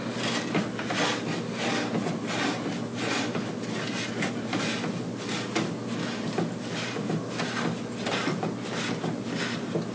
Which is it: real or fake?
real